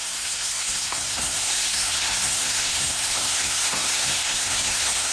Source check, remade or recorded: remade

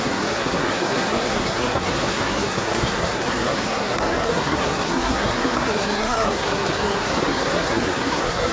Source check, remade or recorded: remade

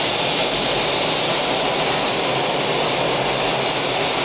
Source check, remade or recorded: recorded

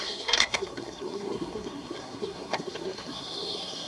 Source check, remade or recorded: remade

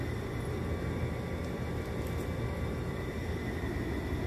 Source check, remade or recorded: recorded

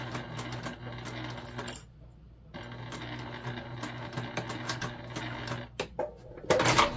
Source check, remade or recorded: recorded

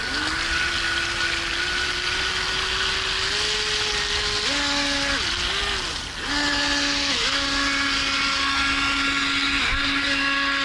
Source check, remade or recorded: recorded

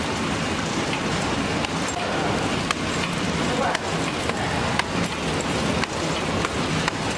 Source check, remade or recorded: recorded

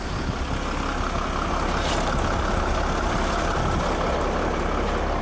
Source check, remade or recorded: recorded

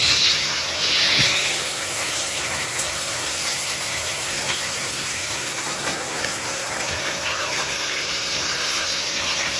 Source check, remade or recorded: remade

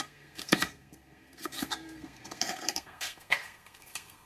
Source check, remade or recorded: remade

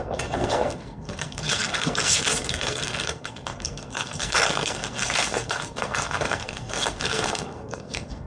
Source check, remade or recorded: remade